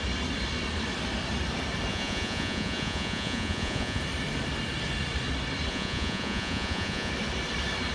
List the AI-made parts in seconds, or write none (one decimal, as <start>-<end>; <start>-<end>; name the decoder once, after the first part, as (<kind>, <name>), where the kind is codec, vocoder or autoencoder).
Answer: 1.9-4.0 (vocoder, Vocos); 5.7-7.1